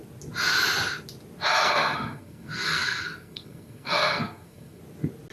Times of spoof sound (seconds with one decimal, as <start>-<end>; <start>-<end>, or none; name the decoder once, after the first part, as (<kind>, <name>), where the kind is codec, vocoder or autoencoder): 1.6-4.8 (codec, SNAC)